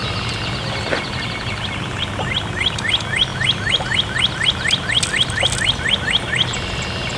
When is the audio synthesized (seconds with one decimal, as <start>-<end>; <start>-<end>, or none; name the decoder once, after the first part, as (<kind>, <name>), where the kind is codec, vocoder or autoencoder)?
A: none